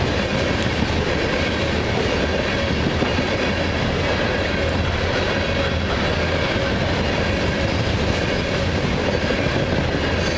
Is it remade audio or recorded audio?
recorded